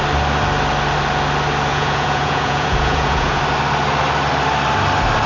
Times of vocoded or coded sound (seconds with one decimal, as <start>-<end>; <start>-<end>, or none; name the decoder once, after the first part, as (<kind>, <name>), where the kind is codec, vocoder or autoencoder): 1.7-3.4 (vocoder, Vocos)